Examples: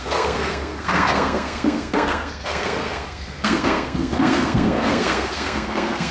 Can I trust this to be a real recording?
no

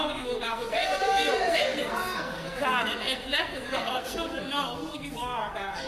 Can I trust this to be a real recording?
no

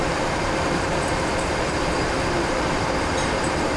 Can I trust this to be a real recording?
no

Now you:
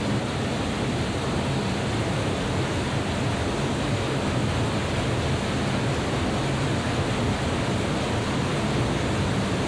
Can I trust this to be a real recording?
yes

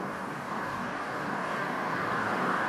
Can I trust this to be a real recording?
no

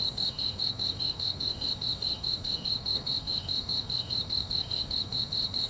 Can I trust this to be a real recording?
no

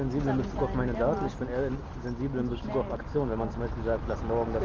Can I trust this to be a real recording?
yes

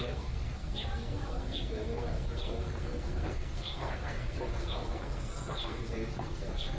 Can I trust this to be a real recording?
no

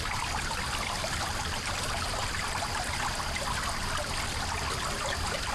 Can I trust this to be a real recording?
yes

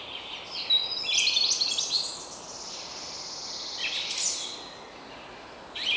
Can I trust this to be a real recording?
yes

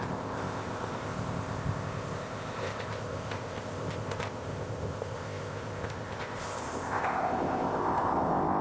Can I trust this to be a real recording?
no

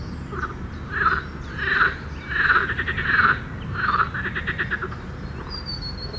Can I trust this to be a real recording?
yes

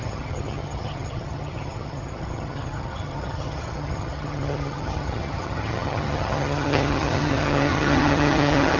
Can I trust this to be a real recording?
no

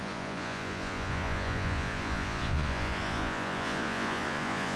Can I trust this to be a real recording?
no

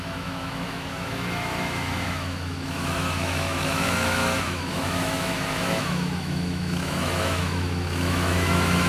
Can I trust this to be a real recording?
no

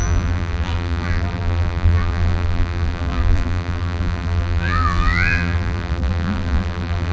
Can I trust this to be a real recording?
no